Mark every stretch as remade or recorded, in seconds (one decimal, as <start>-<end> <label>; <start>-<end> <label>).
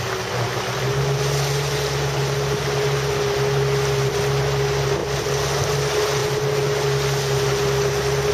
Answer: 0.0-8.3 recorded